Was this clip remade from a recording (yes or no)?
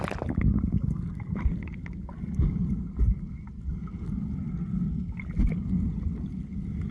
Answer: no